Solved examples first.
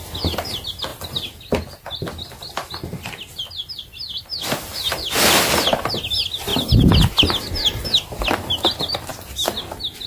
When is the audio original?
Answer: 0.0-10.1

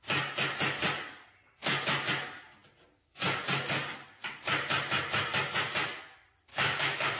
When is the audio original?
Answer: 0.0-6.5

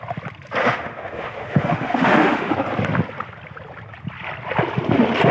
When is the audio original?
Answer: 0.0-0.6; 2.5-5.3

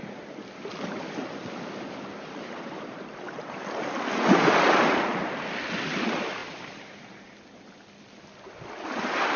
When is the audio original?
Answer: 0.0-9.4

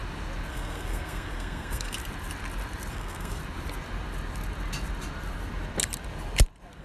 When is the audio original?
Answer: 0.0-0.5; 2.0-2.9; 3.4-6.8

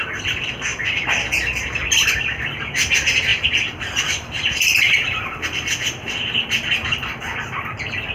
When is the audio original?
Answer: 0.0-0.7; 1.9-3.3; 7.4-8.1

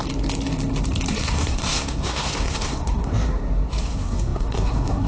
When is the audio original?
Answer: 0.0-1.1; 3.1-3.8

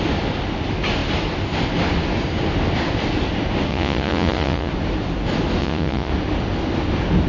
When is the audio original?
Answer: 0.0-3.7; 4.7-5.6; 6.1-7.3